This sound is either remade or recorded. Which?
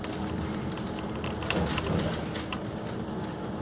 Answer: recorded